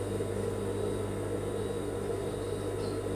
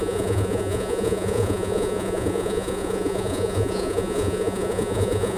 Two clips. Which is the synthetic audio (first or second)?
second